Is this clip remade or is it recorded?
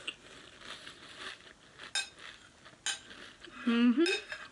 recorded